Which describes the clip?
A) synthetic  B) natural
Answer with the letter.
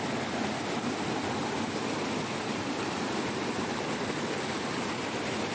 B